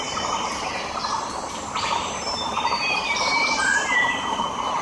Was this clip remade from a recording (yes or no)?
yes